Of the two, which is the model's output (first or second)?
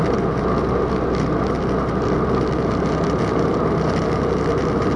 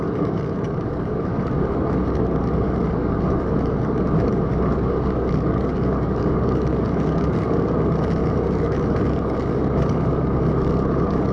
second